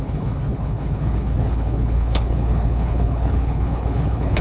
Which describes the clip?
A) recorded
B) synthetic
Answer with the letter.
B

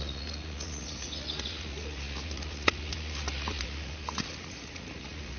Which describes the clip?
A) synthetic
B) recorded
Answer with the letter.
A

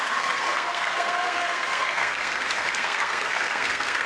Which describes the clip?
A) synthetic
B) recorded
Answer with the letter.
A